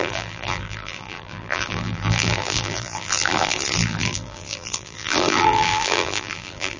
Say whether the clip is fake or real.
fake